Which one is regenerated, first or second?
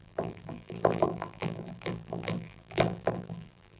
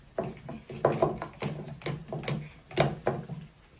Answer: first